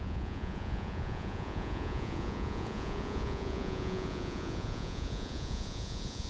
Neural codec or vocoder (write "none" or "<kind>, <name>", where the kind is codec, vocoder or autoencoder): vocoder, Vocos